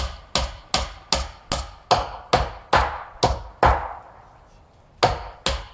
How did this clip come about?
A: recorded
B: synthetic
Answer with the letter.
A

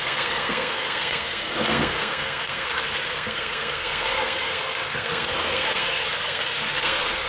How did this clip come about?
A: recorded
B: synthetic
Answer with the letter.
B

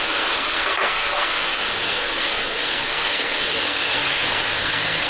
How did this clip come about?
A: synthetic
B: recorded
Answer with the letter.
A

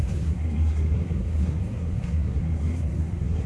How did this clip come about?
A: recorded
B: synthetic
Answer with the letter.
B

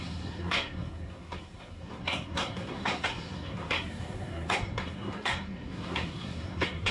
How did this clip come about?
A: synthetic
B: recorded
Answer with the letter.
A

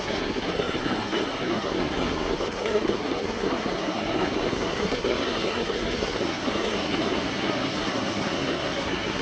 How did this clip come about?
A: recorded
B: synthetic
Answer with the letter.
B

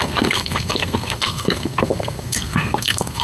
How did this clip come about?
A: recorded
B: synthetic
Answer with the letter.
B